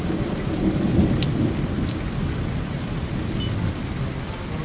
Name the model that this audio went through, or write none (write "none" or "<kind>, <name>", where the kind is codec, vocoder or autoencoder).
none